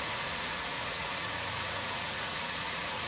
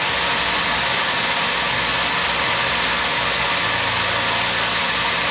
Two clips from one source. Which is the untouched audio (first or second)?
second